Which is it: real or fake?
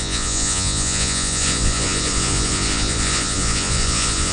fake